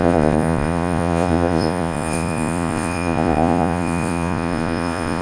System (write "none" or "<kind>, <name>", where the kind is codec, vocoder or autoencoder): vocoder, Vocos